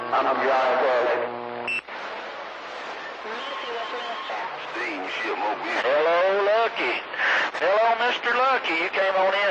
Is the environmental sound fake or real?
real